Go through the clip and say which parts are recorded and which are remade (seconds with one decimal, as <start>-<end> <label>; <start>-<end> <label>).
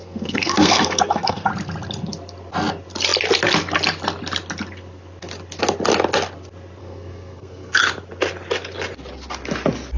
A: 0.0-1.5 remade; 1.5-6.8 recorded; 6.8-7.8 remade; 7.8-10.0 recorded